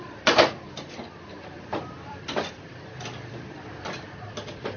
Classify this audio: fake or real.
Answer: fake